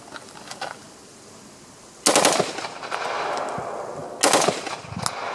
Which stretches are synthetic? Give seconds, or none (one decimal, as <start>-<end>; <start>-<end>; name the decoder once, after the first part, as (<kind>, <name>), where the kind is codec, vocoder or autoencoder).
none